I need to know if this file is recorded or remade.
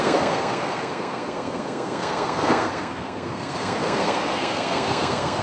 remade